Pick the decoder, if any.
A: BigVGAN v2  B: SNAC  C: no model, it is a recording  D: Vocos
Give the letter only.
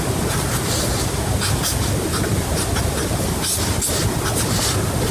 C